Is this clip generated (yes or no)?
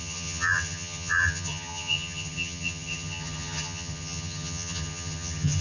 yes